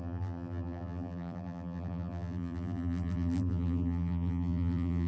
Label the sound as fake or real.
fake